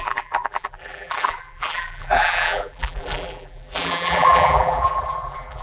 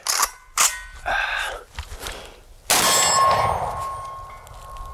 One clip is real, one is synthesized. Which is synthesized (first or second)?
first